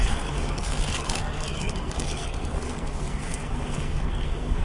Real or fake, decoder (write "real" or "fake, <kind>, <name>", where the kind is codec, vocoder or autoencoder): fake, codec, SNAC